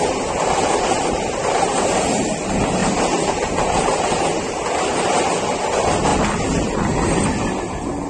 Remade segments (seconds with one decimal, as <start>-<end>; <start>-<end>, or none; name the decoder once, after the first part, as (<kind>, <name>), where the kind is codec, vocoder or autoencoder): none